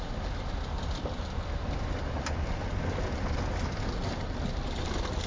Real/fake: real